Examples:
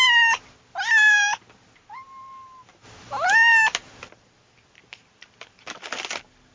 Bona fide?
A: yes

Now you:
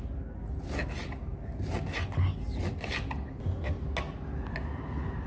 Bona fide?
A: yes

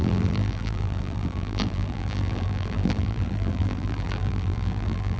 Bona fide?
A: no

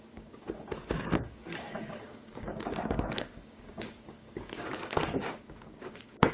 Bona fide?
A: no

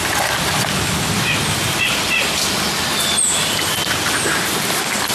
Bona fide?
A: yes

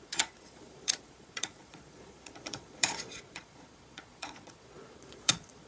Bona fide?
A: no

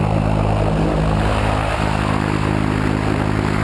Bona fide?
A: yes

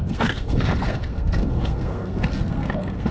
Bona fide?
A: no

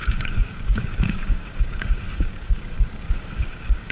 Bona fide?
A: no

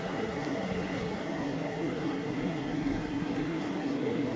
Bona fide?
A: no